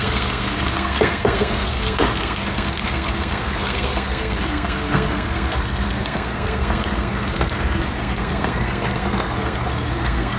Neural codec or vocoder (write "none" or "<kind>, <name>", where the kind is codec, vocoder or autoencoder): codec, SNAC